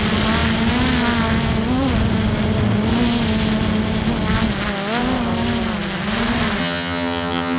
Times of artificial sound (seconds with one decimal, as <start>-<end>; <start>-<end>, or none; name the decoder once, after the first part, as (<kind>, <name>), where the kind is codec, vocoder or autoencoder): 6.6-7.6 (vocoder, HiFi-GAN)